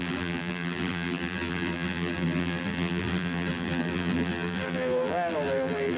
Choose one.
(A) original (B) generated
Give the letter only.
B